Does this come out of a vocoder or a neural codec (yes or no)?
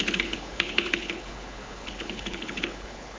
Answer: yes